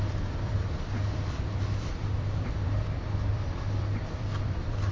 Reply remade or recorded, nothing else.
remade